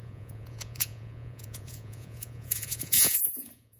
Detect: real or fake fake